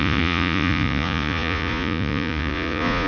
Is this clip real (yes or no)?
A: no